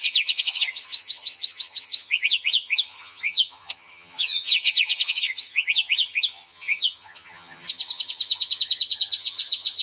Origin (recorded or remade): remade